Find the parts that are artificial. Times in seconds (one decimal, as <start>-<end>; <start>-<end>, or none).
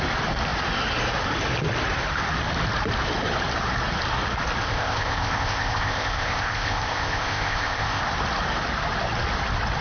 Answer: 4.6-8.0